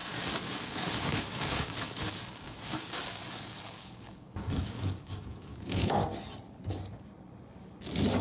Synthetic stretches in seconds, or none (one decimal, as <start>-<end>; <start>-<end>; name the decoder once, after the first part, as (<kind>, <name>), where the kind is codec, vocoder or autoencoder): 0.0-6.0 (codec, DAC)